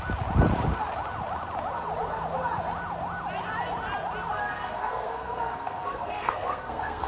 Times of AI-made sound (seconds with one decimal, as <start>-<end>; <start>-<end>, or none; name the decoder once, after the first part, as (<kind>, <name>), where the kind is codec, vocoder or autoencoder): 4.3-7.1 (codec, SNAC)